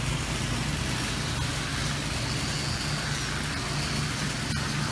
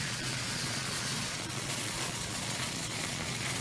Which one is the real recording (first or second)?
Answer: first